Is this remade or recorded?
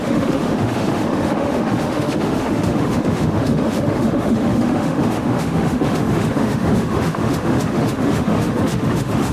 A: remade